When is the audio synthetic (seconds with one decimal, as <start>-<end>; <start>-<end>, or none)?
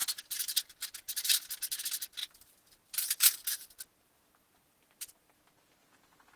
0.0-1.8; 2.2-5.4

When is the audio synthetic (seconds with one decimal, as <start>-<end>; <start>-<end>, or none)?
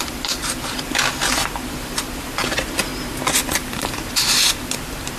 0.0-2.9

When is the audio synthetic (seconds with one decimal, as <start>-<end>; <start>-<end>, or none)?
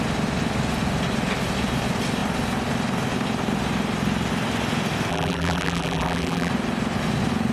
5.1-6.5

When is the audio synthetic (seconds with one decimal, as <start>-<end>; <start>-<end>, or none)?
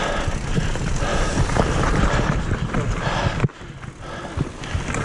1.1-2.5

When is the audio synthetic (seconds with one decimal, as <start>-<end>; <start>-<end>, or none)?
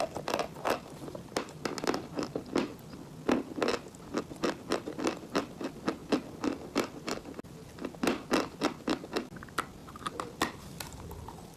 9.8-10.4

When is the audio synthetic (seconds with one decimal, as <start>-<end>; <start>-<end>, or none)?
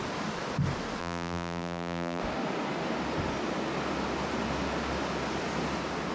1.0-2.2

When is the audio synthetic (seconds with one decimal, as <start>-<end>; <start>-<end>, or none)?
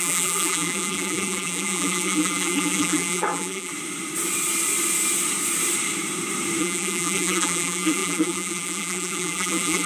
0.0-3.7; 6.6-9.9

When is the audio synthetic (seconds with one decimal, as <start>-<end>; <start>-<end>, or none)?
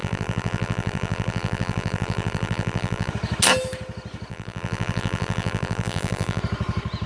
0.0-3.1; 4.3-6.4